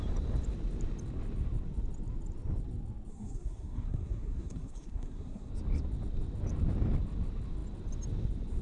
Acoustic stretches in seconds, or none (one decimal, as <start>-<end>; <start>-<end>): 0.0-3.1; 5.5-8.6

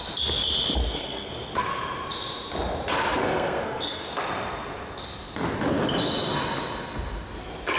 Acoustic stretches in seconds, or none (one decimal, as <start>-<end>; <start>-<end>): 0.0-0.8; 1.3-3.2; 4.1-7.8

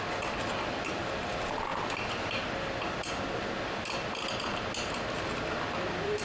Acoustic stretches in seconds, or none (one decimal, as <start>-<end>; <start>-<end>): 0.0-6.2